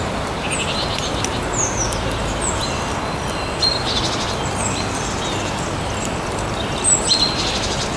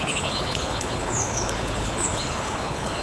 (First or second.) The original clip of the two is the first